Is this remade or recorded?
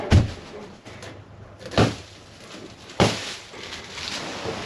recorded